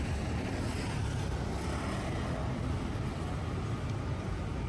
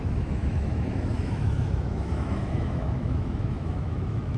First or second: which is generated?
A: second